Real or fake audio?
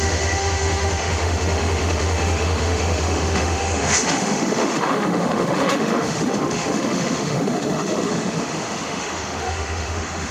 fake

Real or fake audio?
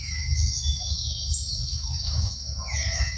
fake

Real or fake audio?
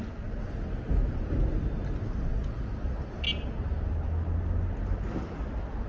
real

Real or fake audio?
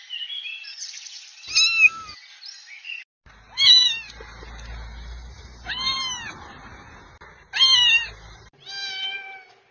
real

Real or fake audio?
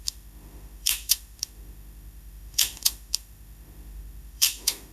fake